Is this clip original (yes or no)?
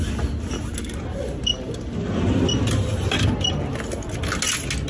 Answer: yes